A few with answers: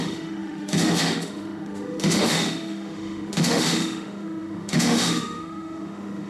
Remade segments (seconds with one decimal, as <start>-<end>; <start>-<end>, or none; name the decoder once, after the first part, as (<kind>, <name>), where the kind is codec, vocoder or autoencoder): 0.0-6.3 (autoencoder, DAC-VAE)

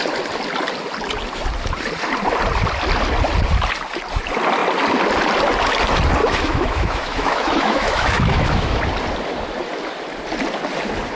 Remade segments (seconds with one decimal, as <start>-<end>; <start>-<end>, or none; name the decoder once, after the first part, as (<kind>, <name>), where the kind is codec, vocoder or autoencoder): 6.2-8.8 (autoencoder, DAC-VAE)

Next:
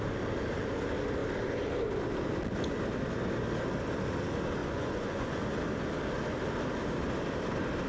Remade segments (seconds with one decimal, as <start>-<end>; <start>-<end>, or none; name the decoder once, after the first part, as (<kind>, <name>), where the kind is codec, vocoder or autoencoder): 4.6-5.4 (vocoder, Vocos)

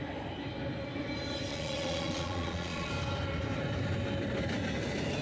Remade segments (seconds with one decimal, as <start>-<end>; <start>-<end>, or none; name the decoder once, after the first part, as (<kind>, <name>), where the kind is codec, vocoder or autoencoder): 1.5-2.9 (vocoder, Vocos)

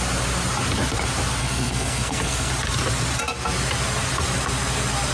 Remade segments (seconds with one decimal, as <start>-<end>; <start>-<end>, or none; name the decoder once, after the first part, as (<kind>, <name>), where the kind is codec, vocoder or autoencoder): 1.4-2.5 (codec, SNAC)

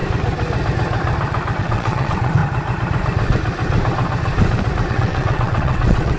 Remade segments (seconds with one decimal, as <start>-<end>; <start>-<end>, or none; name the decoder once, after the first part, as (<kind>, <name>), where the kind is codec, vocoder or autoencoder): 1.6-2.4 (vocoder, WaveNeXt); 4.9-6.2

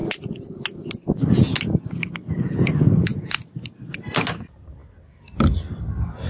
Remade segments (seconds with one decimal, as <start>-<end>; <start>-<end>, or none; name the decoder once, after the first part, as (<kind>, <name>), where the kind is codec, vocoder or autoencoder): none